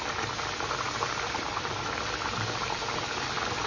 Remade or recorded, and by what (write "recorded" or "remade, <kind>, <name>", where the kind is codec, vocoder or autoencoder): recorded